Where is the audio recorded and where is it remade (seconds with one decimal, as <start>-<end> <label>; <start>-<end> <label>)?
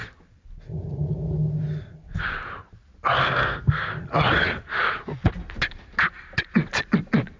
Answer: 0.0-3.2 recorded; 3.2-3.9 remade; 3.9-7.4 recorded